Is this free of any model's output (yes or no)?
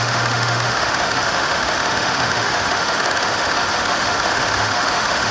no